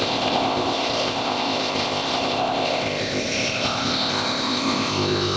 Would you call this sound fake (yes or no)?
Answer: yes